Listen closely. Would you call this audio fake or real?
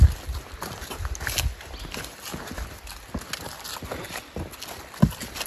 real